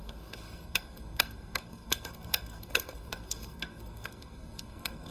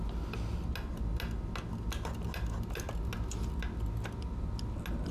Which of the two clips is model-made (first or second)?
first